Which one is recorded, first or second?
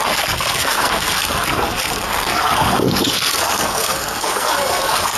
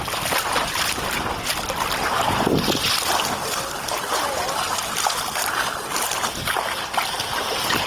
second